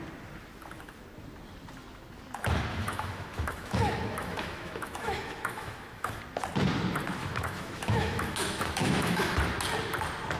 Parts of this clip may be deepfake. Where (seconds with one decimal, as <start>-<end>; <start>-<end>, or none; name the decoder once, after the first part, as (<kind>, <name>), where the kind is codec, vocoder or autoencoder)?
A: 2.7-6.2 (autoencoder, DAC-VAE); 7.2-9.4